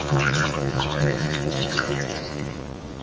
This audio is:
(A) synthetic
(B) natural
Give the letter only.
A